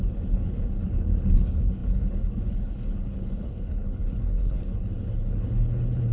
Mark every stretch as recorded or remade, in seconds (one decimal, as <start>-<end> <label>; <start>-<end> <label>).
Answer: 0.0-6.1 remade